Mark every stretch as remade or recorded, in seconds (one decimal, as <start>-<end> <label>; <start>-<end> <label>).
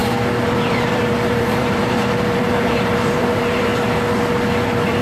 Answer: 0.0-0.5 recorded; 0.5-3.7 remade; 3.7-4.6 recorded; 4.6-5.0 remade